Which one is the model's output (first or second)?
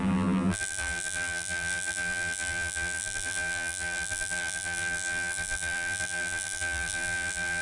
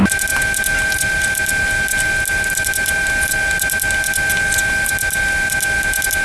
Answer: first